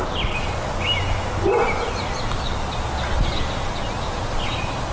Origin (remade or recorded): recorded